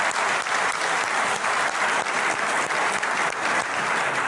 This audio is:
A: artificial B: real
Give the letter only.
B